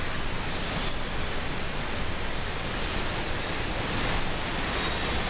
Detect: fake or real real